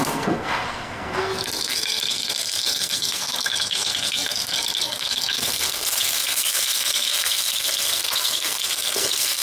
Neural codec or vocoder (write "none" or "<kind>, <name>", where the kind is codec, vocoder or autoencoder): codec, SNAC